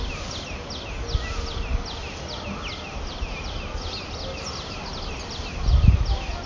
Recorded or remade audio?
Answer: recorded